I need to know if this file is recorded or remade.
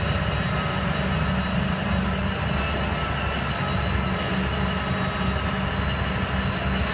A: recorded